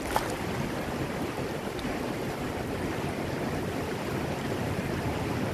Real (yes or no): yes